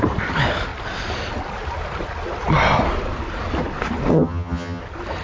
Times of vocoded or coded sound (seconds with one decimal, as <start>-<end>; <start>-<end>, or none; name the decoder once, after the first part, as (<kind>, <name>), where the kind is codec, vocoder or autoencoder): 4.1-4.8 (vocoder, HiFi-GAN)